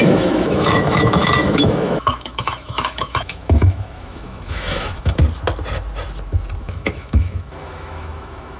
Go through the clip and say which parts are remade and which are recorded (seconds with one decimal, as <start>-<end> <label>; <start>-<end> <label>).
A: 0.0-5.2 remade; 5.2-6.6 recorded; 6.6-8.6 remade